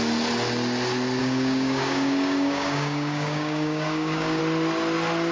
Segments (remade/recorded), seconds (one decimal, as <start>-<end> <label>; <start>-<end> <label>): 0.0-1.2 recorded; 1.2-4.4 remade; 4.4-5.3 recorded